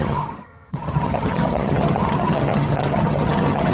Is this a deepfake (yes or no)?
yes